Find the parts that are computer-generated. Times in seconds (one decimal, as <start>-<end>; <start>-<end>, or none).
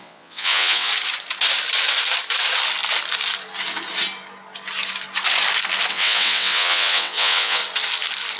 0.0-0.9; 5.9-7.6